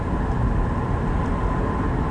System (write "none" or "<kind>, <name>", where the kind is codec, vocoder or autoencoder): none